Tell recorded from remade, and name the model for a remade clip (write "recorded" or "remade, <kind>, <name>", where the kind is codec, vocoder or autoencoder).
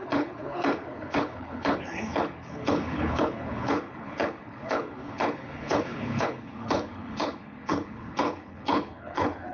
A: remade, codec, HILCodec